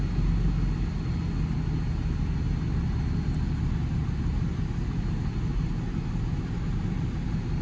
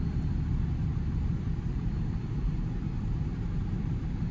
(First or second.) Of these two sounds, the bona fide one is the first